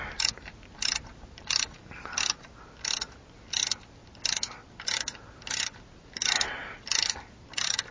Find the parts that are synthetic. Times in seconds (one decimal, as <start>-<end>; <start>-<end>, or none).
none

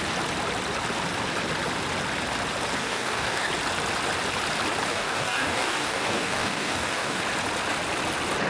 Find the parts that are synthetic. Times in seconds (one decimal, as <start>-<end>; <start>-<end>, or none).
2.8-3.5; 4.9-7.2

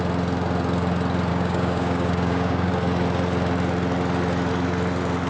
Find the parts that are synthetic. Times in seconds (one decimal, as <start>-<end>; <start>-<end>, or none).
1.3-2.7

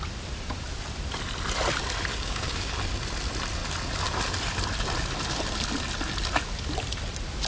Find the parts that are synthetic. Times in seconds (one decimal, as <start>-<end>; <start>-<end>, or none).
2.1-2.7

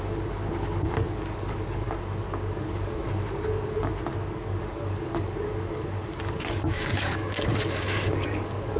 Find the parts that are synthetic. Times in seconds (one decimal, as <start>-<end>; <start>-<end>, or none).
0.0-3.9; 4.6-8.8